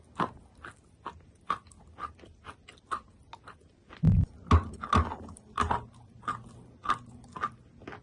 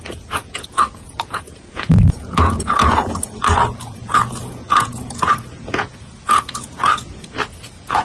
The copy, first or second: second